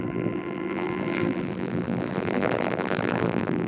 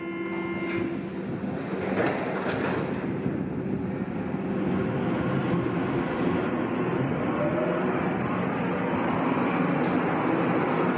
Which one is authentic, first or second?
second